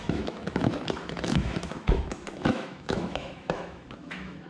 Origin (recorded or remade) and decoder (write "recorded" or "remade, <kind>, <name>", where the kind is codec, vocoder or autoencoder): remade, autoencoder, DAC-VAE